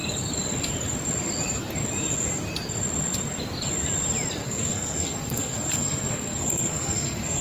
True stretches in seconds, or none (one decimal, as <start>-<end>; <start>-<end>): 0.0-4.4